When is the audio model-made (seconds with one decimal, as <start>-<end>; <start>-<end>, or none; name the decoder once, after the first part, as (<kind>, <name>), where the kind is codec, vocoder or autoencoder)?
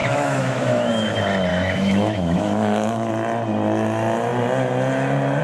0.0-0.9 (autoencoder, DAC-VAE); 1.5-3.1